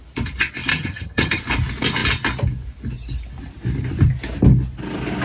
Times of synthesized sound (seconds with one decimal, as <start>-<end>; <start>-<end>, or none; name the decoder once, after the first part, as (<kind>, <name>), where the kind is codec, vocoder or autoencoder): 0.7-1.4 (vocoder, HiFi-GAN)